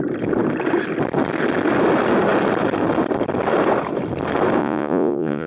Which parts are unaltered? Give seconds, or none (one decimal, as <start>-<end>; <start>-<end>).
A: 0.0-4.6